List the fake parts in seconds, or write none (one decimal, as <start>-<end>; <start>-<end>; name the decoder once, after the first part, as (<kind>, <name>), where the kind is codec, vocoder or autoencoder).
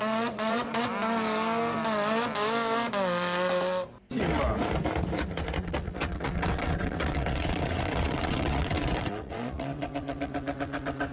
0.0-0.9 (vocoder, WaveNeXt); 5.6-11.1